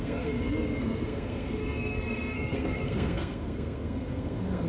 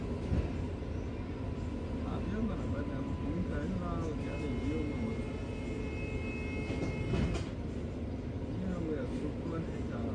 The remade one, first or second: first